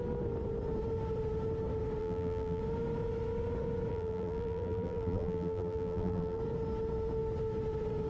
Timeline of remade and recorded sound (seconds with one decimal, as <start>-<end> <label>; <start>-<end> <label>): 0.0-2.0 recorded; 2.0-2.6 remade; 2.6-3.9 recorded; 3.9-6.4 remade; 6.4-8.1 recorded